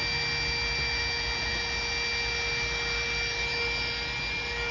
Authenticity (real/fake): real